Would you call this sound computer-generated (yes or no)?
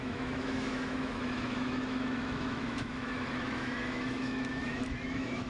yes